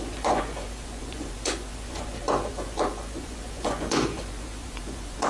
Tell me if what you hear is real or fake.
fake